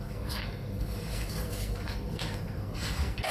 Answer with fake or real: fake